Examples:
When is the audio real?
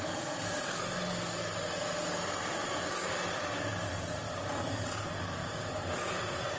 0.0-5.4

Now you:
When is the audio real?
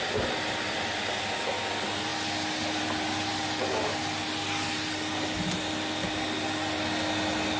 0.0-7.6